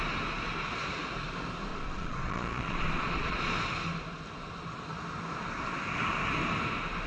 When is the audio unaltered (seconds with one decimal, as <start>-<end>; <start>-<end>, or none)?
0.0-1.7; 3.5-7.1